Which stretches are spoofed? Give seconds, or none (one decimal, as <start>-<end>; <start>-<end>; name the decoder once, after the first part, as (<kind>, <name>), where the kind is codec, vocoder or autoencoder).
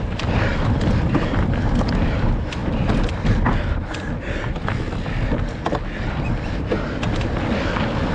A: none